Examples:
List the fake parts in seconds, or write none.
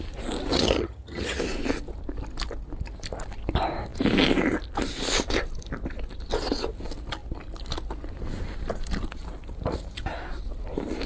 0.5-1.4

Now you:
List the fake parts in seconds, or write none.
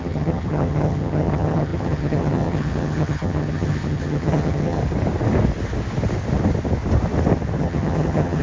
0.0-4.8; 7.6-8.4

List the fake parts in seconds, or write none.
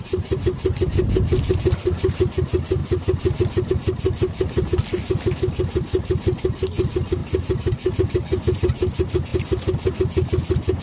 none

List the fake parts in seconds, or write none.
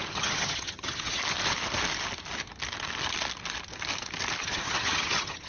0.0-1.2; 4.4-5.5